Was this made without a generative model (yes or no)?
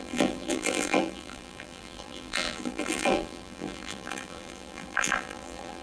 no